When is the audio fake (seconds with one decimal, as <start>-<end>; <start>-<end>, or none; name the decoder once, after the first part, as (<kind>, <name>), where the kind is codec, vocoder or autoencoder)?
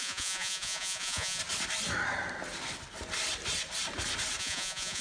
0.0-1.4 (vocoder, Vocos); 4.4-5.0